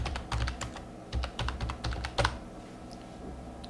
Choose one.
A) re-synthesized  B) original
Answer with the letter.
B